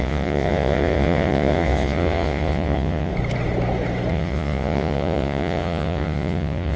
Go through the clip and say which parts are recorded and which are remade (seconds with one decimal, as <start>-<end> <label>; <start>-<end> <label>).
0.0-3.1 remade; 3.1-4.1 recorded; 4.1-6.8 remade